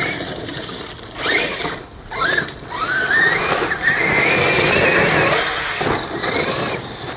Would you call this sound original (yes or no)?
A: yes